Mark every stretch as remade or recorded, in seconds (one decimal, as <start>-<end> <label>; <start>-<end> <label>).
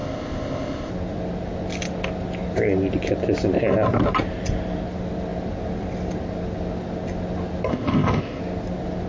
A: 0.0-0.9 remade; 0.9-7.7 recorded; 7.7-8.4 remade; 8.4-9.1 recorded